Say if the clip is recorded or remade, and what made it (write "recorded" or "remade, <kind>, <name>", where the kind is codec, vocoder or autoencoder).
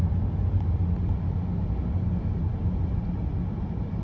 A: recorded